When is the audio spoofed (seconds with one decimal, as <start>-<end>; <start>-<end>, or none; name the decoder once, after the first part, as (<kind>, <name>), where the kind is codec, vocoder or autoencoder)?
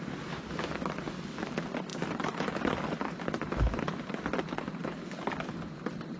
none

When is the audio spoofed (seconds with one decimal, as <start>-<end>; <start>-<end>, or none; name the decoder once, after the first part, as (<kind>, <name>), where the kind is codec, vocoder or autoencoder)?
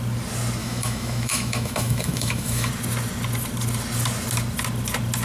0.6-2.7 (autoencoder, DAC-VAE)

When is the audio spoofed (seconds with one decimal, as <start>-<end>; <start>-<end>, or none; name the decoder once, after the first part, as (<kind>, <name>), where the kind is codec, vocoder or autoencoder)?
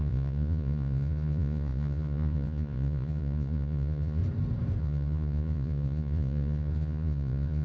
0.0-4.2 (vocoder, Vocos); 4.8-7.6